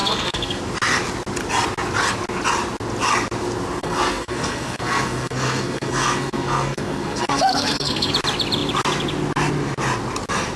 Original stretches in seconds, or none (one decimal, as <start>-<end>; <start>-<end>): 0.6-3.8; 8.1-10.6